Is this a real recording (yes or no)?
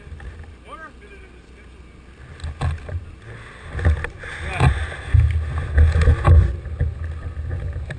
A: yes